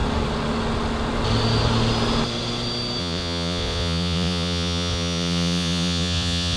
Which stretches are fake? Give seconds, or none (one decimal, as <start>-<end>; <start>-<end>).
3.0-6.6